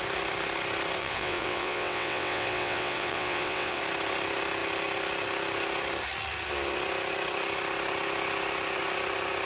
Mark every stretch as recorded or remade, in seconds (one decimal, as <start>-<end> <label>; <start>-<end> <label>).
0.0-1.0 recorded; 1.0-3.8 remade; 3.8-9.5 recorded